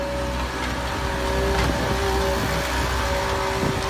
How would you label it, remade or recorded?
recorded